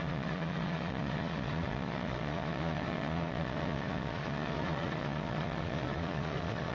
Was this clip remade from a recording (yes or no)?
yes